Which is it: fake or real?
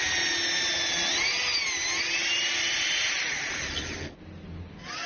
real